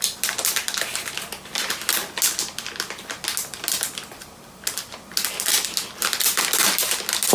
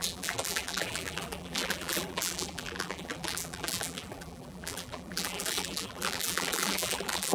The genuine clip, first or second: first